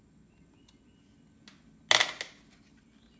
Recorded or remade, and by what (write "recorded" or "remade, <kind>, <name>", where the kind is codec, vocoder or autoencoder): recorded